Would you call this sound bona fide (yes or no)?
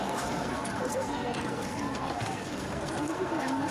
no